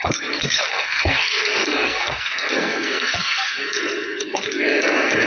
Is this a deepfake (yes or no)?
yes